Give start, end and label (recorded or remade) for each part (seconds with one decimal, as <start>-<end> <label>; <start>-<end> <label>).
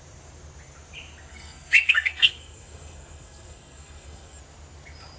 0.0-1.3 recorded; 1.3-4.4 remade; 4.4-5.2 recorded